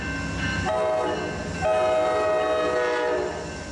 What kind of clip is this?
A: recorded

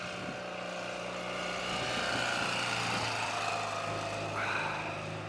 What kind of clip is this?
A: recorded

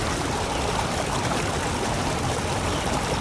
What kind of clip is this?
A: recorded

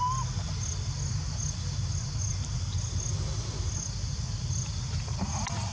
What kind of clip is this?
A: recorded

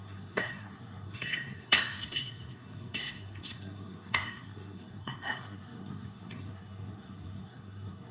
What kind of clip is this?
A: remade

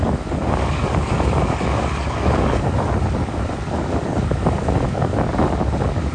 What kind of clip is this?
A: remade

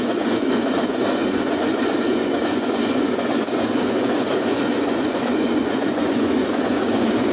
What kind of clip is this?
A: remade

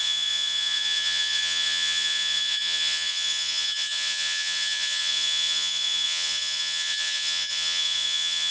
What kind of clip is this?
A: remade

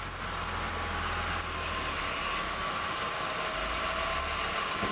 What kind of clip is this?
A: recorded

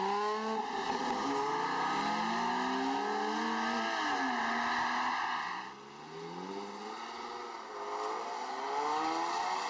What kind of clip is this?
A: recorded